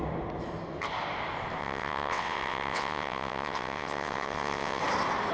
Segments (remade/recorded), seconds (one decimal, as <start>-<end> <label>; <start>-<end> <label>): 0.0-1.6 recorded; 1.6-4.8 remade; 4.8-5.3 recorded